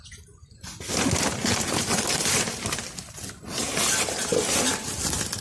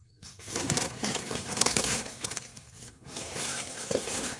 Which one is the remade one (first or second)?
second